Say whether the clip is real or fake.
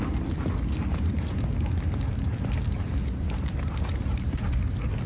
real